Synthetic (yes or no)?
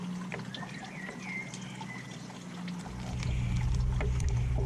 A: no